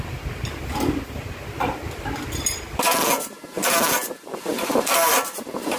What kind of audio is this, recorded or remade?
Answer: recorded